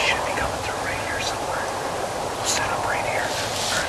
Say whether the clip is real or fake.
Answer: real